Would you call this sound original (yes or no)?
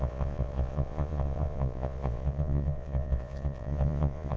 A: no